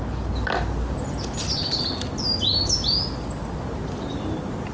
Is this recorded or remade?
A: recorded